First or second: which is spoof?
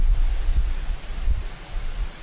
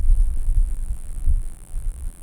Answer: second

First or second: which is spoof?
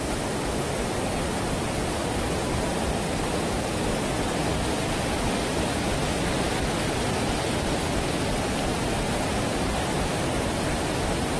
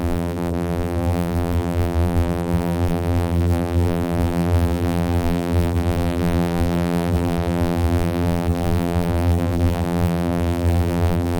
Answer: second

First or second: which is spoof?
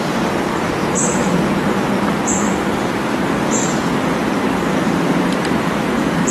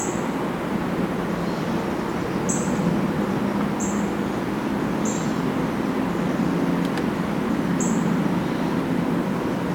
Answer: first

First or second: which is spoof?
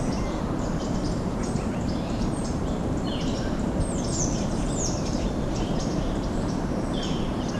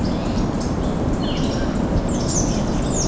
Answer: first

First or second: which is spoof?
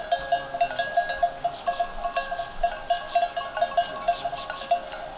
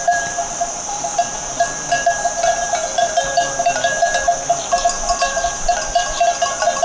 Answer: second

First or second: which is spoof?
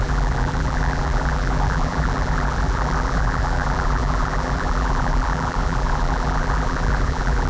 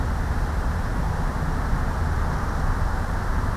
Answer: first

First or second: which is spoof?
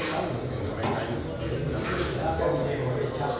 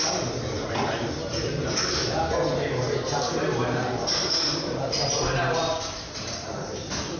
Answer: second